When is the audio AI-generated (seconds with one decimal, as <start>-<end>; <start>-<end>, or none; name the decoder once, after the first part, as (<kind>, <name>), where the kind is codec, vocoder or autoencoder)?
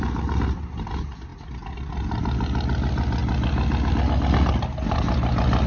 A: none